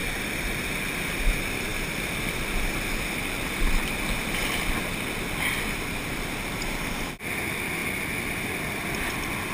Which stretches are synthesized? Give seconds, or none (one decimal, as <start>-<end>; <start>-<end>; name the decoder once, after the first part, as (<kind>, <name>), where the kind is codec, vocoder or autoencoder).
none